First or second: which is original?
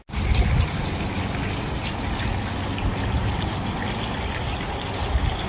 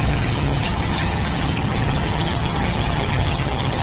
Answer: first